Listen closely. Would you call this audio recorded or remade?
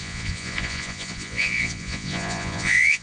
remade